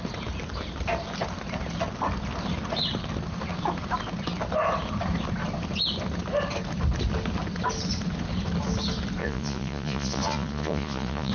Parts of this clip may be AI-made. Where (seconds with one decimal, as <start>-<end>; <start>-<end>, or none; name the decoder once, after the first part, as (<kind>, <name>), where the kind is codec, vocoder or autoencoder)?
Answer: 9.2-11.3 (vocoder, Vocos)